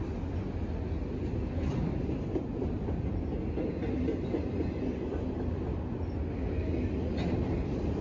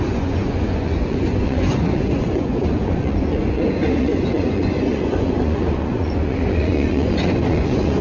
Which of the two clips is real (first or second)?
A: first